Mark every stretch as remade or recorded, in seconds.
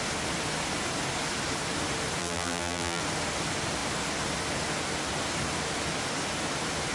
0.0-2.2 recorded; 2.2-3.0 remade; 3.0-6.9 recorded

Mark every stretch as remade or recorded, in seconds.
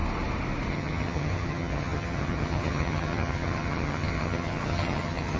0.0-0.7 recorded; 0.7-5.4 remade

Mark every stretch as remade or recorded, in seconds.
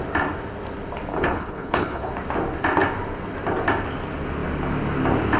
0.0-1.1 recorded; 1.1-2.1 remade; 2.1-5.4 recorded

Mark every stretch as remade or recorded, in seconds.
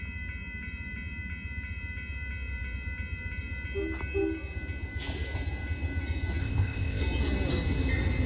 0.0-6.4 recorded; 6.4-7.0 remade; 7.0-8.3 recorded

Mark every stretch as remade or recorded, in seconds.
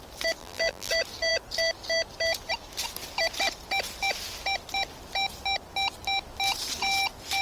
0.0-0.4 recorded; 0.4-0.9 remade; 0.9-7.4 recorded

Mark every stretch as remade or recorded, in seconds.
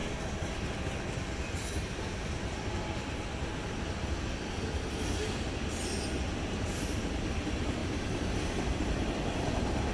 0.0-9.9 recorded